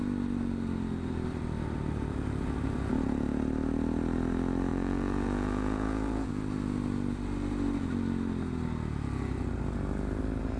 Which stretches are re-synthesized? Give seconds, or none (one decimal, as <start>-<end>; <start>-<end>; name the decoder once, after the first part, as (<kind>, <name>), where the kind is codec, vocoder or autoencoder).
4.7-6.3 (vocoder, Vocos)